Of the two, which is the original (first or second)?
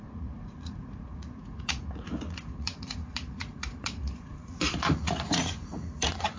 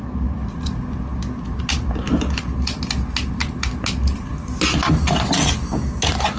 second